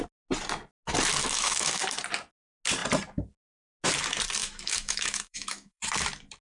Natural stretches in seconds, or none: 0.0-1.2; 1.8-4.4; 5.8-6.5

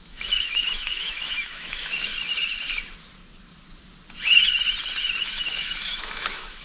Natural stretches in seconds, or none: 2.1-5.2

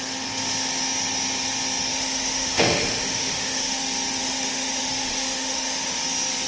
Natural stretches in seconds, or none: 0.0-1.9; 3.8-4.2; 6.0-6.5

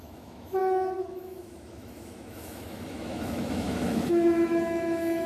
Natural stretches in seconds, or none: none

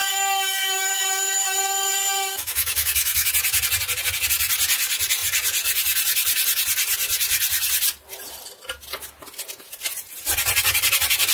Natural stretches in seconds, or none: 3.3-11.3

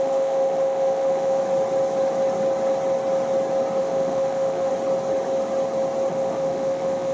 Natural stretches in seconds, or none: 1.4-3.8; 4.7-6.1

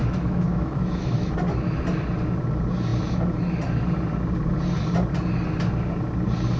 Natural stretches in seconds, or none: 1.3-6.6